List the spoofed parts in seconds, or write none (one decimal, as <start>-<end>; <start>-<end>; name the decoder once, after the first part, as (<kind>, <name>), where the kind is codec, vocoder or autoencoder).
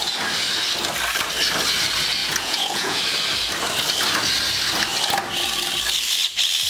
2.2-3.0 (vocoder, Vocos)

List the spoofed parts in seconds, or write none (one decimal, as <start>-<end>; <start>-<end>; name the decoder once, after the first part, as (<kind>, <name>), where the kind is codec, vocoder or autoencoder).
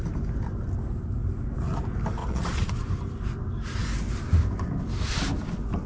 2.2-2.7 (vocoder, Vocos)